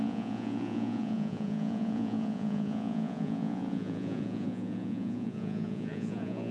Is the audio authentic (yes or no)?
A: no